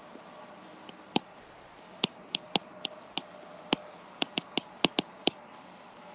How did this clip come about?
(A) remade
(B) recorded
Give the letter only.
B